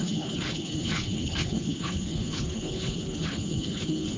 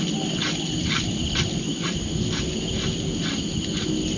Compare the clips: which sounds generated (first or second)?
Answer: first